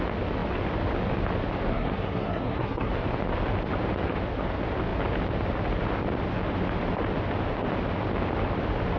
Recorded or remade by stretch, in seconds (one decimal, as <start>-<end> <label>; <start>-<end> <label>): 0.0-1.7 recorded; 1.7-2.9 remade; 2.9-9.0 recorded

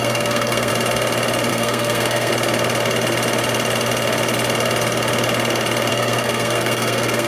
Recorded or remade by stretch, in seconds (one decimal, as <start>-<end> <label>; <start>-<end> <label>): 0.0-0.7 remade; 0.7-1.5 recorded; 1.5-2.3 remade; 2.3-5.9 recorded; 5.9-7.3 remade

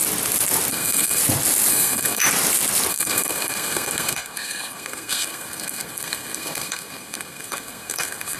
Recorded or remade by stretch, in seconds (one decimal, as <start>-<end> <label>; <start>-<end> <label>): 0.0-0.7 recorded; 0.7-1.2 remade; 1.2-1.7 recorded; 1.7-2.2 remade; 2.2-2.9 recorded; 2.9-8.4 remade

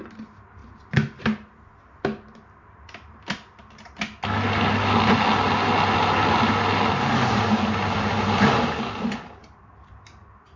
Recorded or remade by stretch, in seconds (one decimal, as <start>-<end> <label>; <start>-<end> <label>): 0.0-10.6 recorded

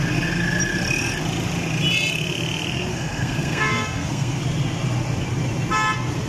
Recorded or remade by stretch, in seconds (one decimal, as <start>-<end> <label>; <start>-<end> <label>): 0.0-2.9 recorded; 2.9-4.4 remade; 4.4-6.3 recorded